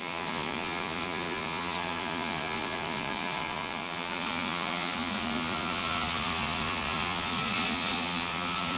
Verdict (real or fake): fake